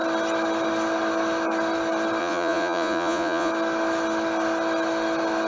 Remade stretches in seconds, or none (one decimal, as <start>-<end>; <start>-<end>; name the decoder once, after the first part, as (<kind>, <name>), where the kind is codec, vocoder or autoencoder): 2.2-3.5 (vocoder, Vocos)